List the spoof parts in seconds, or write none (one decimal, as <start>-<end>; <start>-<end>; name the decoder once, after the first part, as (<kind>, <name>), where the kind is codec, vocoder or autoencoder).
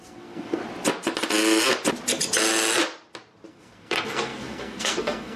0.0-0.6 (codec, SNAC); 3.5-5.4